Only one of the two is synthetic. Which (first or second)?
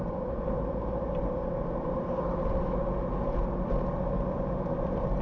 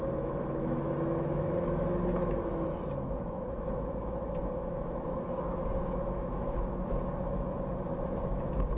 second